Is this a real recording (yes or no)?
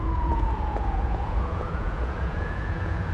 no